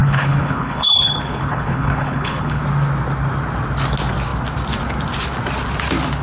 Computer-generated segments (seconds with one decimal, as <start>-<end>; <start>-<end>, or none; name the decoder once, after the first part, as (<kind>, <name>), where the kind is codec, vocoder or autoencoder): 0.0-2.6 (codec, HILCodec)

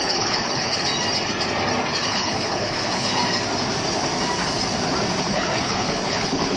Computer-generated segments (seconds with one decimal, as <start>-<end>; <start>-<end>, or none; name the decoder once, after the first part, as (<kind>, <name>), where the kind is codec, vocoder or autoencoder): 0.0-0.9 (codec, HILCodec); 2.0-3.2; 5.2-6.6

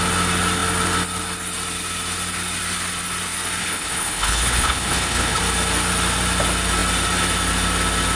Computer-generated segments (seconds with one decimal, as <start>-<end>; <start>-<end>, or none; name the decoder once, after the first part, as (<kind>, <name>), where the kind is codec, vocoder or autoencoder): 3.6-5.4 (codec, HILCodec)

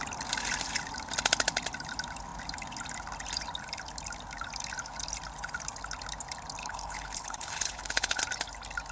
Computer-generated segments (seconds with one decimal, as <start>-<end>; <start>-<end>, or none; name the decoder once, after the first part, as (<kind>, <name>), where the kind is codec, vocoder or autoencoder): 6.6-8.2 (codec, HILCodec)

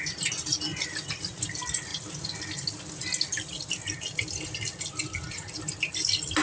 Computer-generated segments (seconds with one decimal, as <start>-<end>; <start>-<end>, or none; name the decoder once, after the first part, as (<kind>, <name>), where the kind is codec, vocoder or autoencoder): none

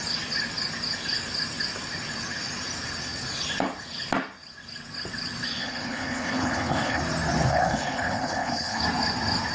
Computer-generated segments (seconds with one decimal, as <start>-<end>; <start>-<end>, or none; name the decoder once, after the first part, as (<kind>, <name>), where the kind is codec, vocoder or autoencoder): 5.6-7.0 (codec, HILCodec); 7.5-8.8